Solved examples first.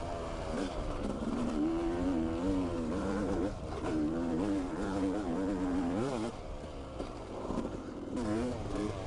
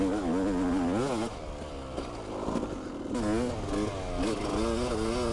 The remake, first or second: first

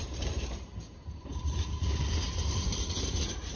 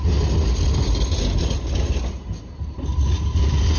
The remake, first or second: first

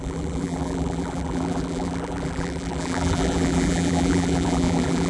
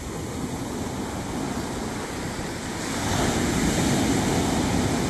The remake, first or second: first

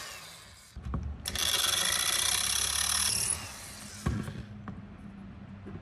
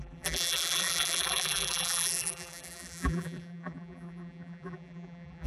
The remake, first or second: second